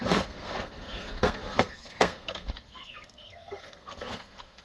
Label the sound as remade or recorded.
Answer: remade